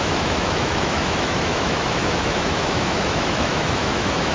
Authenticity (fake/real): fake